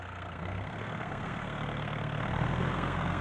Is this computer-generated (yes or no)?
yes